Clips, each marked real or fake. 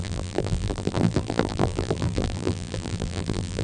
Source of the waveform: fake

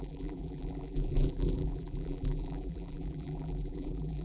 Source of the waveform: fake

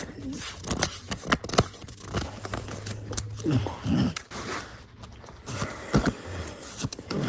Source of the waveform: real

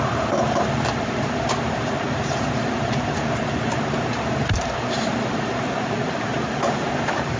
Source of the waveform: fake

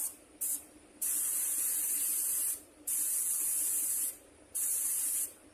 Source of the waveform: fake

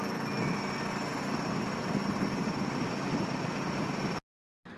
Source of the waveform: real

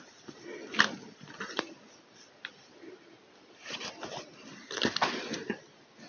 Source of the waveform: fake